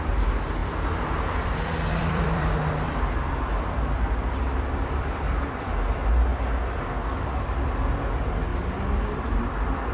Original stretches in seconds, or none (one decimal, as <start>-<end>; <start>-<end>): 0.0-0.6; 5.7-8.5; 9.4-9.9